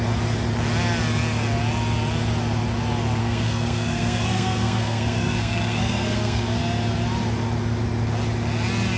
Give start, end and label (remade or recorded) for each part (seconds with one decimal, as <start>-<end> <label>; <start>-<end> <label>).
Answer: 0.0-3.2 recorded; 3.2-6.6 remade; 6.6-9.0 recorded